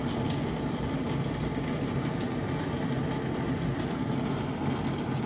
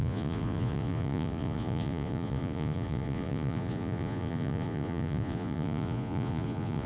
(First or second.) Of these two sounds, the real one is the first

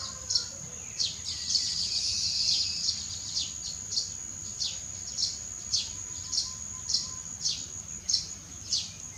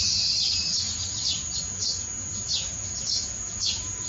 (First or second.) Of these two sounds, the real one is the first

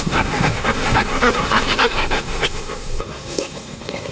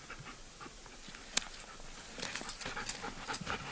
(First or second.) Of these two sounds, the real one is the second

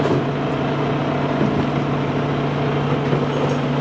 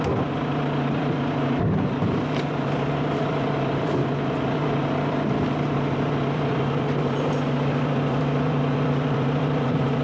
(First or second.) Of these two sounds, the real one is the first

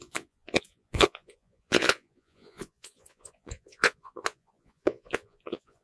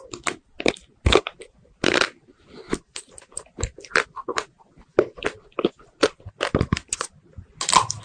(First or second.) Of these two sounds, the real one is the second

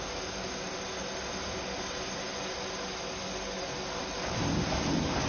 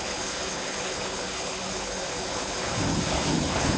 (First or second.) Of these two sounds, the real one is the first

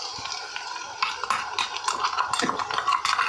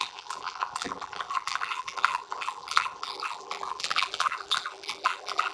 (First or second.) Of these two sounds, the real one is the first